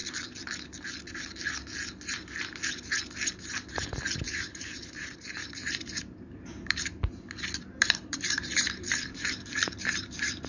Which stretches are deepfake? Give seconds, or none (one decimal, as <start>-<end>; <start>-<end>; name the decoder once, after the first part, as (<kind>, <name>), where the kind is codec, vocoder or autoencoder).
3.7-6.9 (vocoder, BigVGAN v2); 7.6-10.5